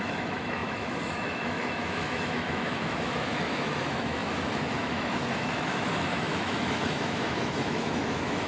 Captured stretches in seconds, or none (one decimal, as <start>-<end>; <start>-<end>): none